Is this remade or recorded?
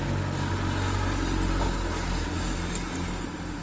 recorded